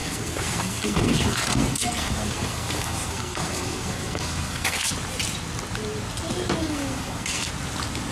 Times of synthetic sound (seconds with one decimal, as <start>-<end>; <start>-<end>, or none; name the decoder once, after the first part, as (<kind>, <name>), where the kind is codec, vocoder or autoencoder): 0.0-4.9 (codec, SNAC); 6.6-7.5